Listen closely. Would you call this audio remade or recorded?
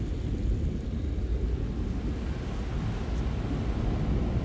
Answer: recorded